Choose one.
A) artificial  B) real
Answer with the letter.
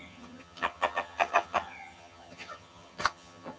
A